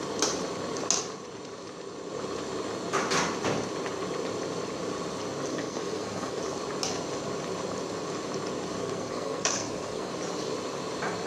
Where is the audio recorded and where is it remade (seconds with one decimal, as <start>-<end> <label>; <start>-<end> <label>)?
0.0-5.5 recorded; 5.5-6.4 remade; 6.4-8.8 recorded; 8.8-10.1 remade; 10.1-11.3 recorded